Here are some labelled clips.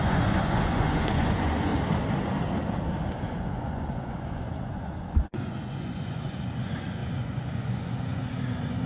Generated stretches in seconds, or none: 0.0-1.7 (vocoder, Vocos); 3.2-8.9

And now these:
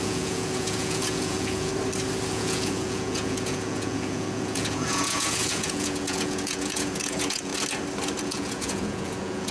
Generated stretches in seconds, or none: 0.0-1.7 (vocoder, Vocos); 2.3-7.5; 8.2-9.5

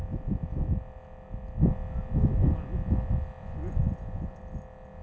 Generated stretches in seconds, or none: 3.4-4.4 (vocoder, Vocos)